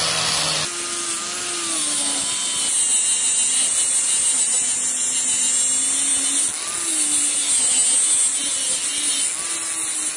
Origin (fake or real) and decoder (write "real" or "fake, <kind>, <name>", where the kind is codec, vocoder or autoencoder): real